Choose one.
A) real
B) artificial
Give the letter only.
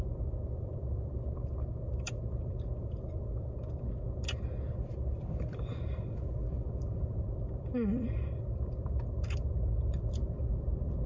B